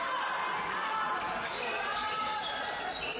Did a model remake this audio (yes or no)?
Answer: no